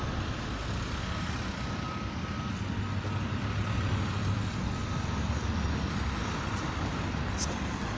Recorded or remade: recorded